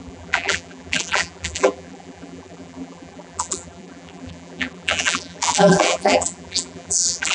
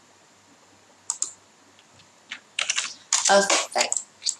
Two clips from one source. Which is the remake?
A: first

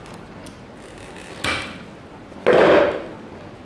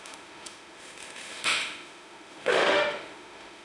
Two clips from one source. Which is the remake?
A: second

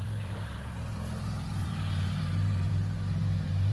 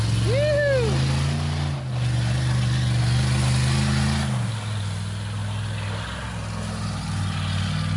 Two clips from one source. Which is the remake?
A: first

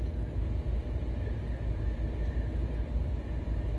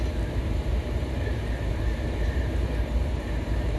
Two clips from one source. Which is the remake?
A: second